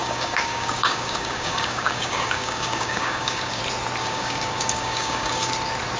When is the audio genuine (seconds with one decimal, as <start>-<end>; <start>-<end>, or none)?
3.6-4.0; 5.5-6.0